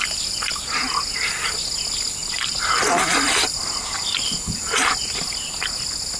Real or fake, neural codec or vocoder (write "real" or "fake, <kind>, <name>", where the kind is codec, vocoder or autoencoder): real